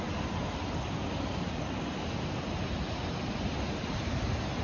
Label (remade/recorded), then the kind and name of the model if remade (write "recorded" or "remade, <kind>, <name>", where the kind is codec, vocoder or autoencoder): recorded